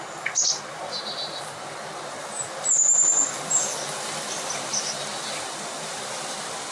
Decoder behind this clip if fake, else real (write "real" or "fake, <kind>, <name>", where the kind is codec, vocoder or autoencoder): real